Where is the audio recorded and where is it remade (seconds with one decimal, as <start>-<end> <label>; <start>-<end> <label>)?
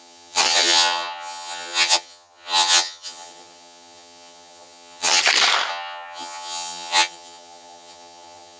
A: 0.0-5.2 remade; 5.2-5.7 recorded; 5.7-8.6 remade